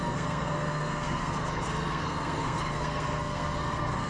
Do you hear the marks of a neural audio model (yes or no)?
yes